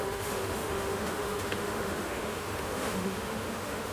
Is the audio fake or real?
fake